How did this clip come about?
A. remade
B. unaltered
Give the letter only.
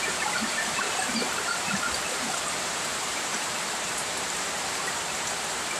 A